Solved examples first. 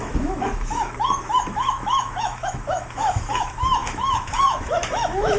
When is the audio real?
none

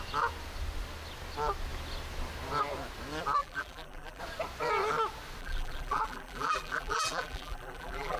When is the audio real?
0.0-3.4; 4.2-5.4